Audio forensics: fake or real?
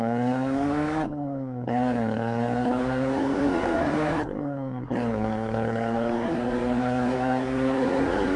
fake